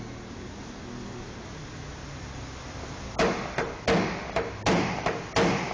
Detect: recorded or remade recorded